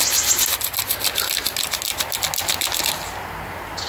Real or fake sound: real